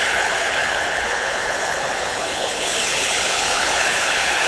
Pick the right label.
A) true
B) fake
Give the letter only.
B